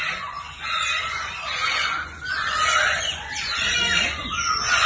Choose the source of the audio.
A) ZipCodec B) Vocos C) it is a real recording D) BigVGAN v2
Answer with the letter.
B